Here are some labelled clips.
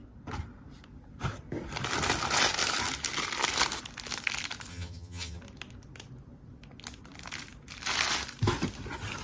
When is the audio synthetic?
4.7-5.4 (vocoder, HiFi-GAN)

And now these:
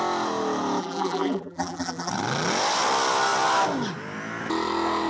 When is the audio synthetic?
0.8-2.1 (vocoder, BigVGAN v2)

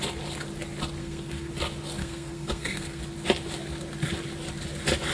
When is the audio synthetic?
1.0-1.5 (codec, SNAC); 2.0-3.0

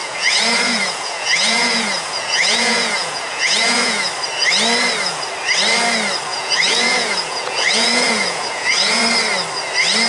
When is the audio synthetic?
0.0-4.1 (vocoder, Vocos); 6.3-9.0

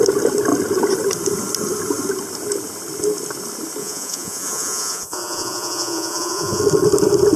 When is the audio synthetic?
3.8-6.6 (vocoder, Vocos)

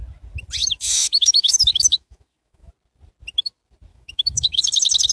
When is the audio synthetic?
0.6-2.7 (autoencoder, DAC-VAE); 3.9-4.6

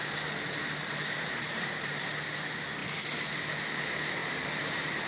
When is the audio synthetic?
0.6-2.0 (vocoder, BigVGAN v2); 4.2-5.1

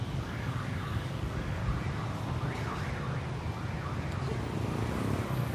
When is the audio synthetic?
0.0-1.6 (codec, DAC); 4.9-5.5